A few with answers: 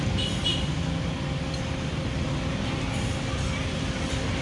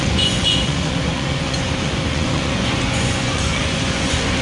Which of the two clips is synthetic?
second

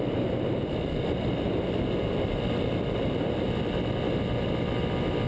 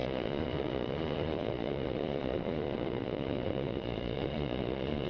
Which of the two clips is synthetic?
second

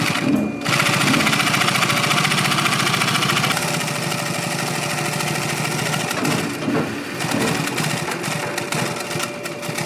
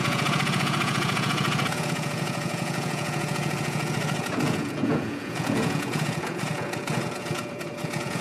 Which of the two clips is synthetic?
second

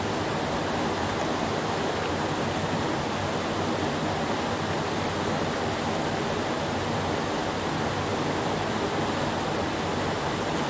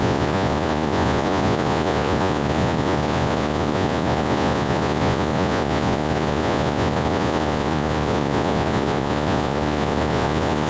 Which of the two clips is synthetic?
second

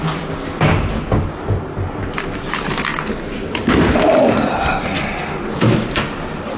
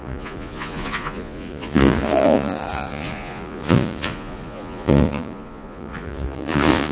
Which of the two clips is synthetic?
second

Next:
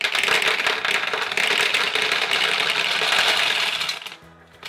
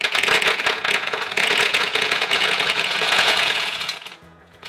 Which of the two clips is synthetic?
second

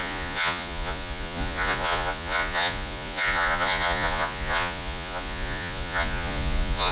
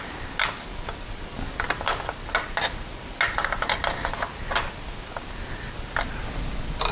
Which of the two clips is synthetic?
first